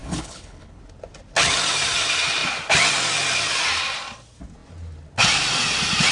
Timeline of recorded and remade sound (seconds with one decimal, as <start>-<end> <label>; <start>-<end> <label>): 0.0-0.8 remade; 0.8-6.1 recorded